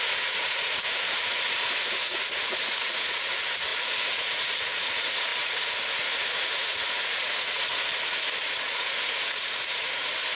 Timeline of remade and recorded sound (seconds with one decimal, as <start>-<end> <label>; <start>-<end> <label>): 0.0-7.9 remade; 7.9-8.4 recorded; 8.4-10.3 remade